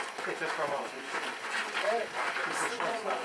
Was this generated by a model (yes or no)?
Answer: yes